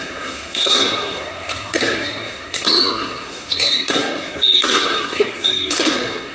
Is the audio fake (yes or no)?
yes